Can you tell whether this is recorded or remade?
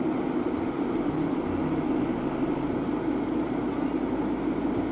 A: recorded